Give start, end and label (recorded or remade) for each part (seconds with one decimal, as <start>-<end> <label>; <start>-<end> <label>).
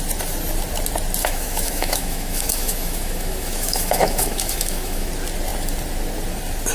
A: 0.0-1.2 recorded; 1.2-5.1 remade; 5.1-6.7 recorded